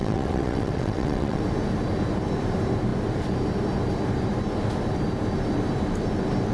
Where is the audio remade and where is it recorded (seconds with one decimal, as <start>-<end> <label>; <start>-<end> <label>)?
0.0-1.4 remade; 1.4-6.5 recorded